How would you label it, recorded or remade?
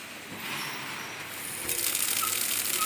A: recorded